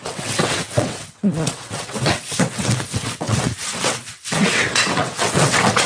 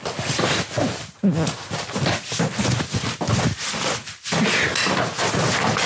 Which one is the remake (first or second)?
first